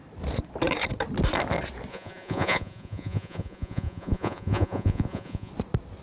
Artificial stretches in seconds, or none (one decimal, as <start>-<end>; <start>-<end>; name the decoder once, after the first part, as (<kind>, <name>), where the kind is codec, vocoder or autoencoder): 1.9-5.5 (vocoder, Vocos)